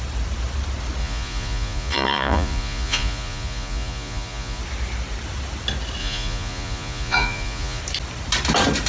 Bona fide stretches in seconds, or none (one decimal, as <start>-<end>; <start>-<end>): 0.0-1.0; 4.6-6.0; 7.8-8.9